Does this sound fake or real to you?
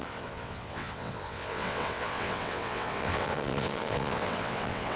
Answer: fake